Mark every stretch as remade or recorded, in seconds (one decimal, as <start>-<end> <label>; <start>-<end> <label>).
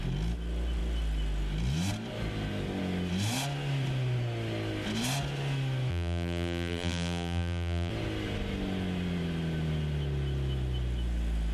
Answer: 0.0-5.9 recorded; 5.9-7.9 remade; 7.9-11.5 recorded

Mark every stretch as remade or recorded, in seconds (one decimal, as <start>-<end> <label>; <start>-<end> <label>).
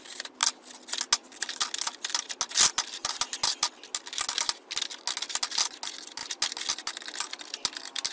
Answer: 0.0-8.1 recorded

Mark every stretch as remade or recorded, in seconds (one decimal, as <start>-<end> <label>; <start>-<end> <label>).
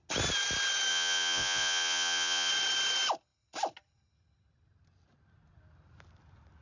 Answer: 0.0-0.9 recorded; 0.9-2.5 remade; 2.5-6.6 recorded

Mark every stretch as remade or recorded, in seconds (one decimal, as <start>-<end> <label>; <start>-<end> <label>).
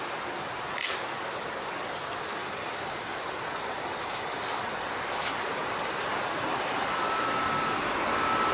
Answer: 0.0-2.4 recorded; 2.4-7.3 remade; 7.3-8.5 recorded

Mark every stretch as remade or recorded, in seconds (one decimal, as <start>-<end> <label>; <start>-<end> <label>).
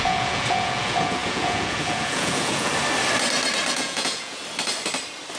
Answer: 0.0-2.7 remade; 2.7-3.7 recorded; 3.7-4.4 remade; 4.4-5.4 recorded